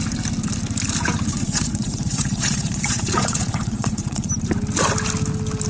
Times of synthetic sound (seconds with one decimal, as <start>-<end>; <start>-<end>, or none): 1.3-4.3